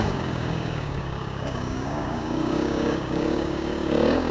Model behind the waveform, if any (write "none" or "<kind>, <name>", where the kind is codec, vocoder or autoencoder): codec, DAC